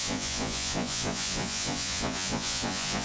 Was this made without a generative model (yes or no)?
no